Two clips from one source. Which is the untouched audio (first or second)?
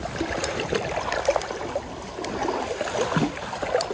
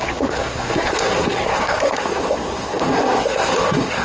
first